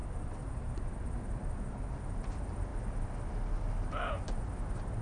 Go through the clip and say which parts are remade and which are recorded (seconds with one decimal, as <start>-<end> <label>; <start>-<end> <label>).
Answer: 0.0-1.6 remade; 1.6-2.7 recorded; 2.7-4.1 remade; 4.1-5.0 recorded